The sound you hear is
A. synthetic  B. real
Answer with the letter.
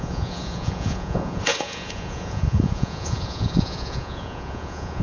A